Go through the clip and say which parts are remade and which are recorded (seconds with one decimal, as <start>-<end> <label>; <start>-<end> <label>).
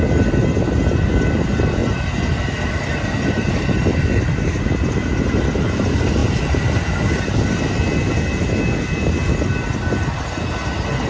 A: 0.0-1.8 recorded; 1.8-4.6 remade; 4.6-11.1 recorded